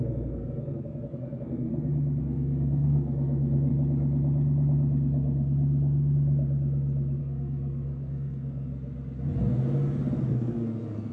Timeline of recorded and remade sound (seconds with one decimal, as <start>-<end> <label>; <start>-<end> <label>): 0.0-1.7 remade; 1.7-2.2 recorded; 2.2-3.7 remade; 3.7-7.2 recorded; 7.2-8.7 remade; 8.7-10.3 recorded; 10.3-11.1 remade